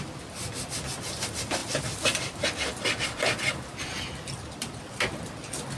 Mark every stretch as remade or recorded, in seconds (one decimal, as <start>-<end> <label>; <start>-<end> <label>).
0.0-5.8 recorded